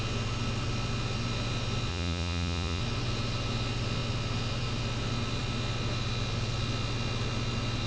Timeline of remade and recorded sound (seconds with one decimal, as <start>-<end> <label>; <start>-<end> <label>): 0.0-1.9 recorded; 1.9-2.8 remade; 2.8-7.9 recorded